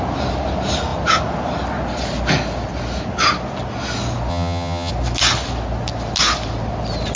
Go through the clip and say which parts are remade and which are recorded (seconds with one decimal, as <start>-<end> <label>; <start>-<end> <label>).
0.0-4.3 recorded; 4.3-4.9 remade; 4.9-7.2 recorded